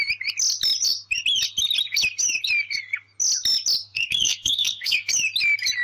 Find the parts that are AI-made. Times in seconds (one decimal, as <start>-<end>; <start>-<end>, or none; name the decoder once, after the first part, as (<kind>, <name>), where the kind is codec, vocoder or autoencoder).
3.8-5.1 (codec, SNAC)